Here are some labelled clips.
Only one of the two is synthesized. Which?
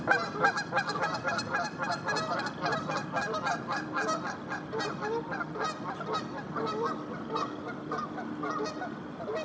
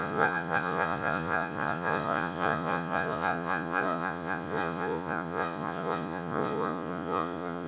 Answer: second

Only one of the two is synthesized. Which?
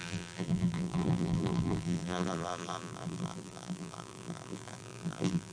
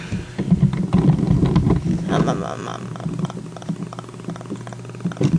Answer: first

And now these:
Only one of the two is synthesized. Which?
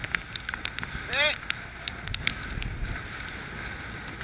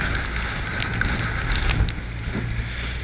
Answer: first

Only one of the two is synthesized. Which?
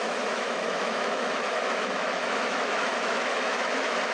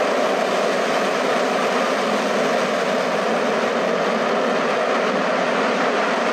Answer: first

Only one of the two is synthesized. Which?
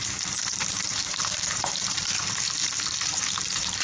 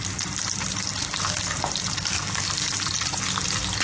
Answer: first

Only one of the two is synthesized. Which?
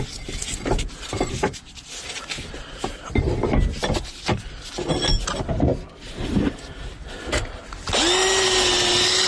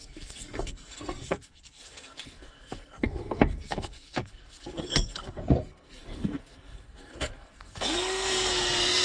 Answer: second